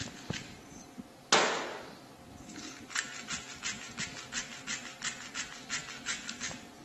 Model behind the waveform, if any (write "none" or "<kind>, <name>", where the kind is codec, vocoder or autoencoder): none